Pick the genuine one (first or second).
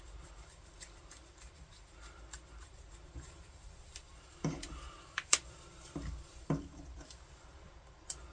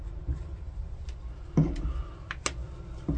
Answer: second